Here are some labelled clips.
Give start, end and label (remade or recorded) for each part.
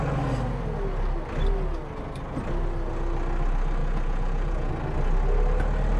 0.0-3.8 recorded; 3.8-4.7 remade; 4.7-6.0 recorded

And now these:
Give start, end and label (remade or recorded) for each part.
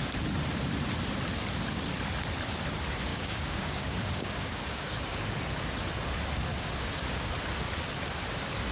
0.0-3.1 recorded; 3.1-5.0 remade; 5.0-6.5 recorded; 6.5-7.3 remade; 7.3-8.7 recorded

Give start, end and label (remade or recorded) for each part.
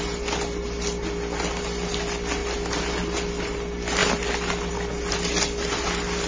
0.0-6.3 recorded